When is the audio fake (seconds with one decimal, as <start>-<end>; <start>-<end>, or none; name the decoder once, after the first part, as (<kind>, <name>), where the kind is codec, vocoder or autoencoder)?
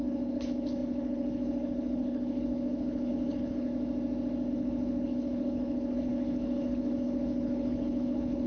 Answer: 0.0-3.7 (codec, HILCodec); 4.5-8.5